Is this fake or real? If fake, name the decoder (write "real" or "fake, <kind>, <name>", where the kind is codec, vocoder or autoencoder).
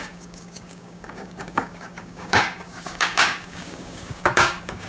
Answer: fake, codec, DAC